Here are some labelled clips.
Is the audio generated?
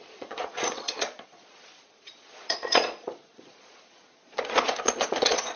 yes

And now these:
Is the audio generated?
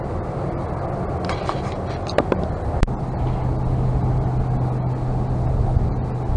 no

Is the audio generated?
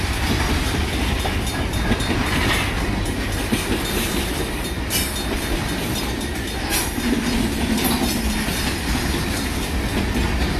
no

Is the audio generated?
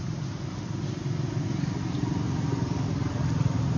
no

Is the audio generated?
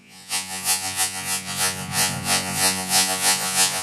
yes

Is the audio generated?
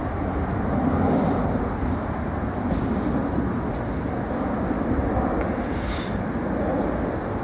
no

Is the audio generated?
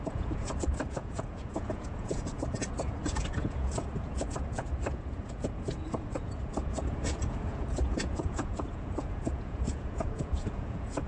yes